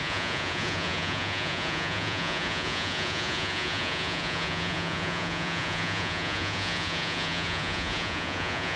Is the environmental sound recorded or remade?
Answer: remade